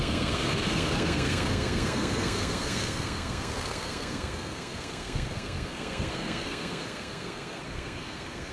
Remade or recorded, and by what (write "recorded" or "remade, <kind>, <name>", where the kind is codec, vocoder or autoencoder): remade, codec, SNAC